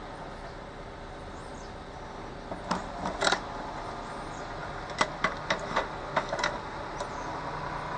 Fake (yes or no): no